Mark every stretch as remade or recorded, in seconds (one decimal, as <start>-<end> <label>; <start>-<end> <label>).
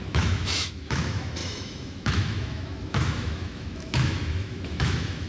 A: 0.0-5.3 remade